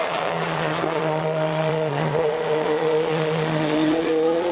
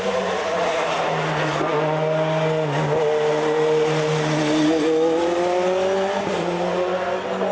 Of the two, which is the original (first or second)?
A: second